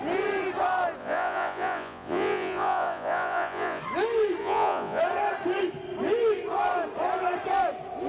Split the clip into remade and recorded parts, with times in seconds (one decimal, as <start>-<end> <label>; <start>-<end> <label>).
0.0-1.0 recorded; 1.0-3.8 remade; 3.8-4.4 recorded; 4.4-5.0 remade; 5.0-8.1 recorded